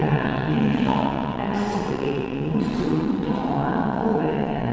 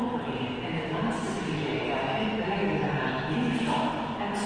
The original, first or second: second